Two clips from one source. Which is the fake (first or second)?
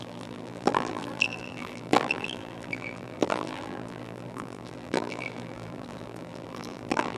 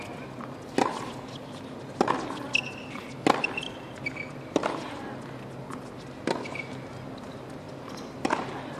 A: first